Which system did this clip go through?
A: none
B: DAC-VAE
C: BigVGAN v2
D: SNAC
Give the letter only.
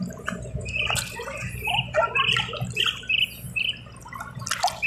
A